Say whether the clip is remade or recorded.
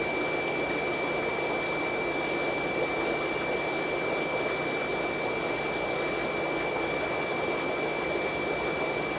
recorded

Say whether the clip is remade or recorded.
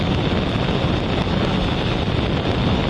recorded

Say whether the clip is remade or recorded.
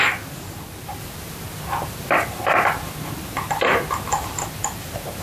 recorded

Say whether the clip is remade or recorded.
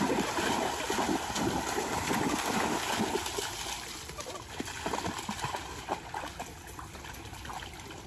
recorded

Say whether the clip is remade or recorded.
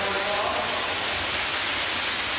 recorded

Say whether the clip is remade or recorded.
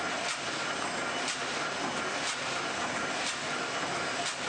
remade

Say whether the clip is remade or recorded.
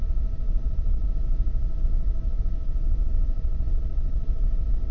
recorded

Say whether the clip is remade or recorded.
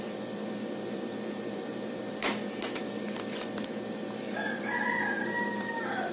remade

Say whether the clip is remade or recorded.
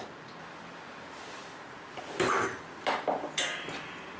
recorded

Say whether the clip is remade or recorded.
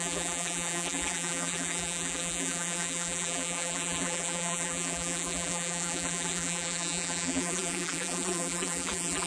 remade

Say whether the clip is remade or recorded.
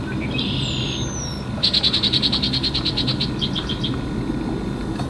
recorded